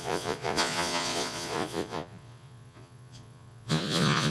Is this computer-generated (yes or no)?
yes